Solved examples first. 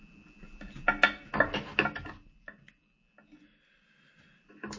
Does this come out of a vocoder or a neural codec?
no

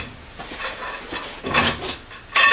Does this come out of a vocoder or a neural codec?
no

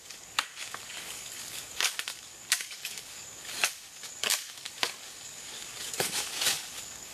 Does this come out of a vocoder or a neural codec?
yes